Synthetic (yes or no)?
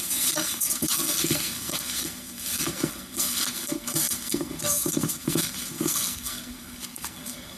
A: yes